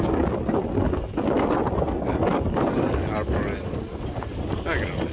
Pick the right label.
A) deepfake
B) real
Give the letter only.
B